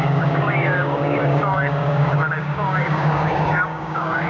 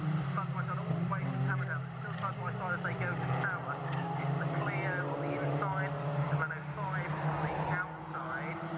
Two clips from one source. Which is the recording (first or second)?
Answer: second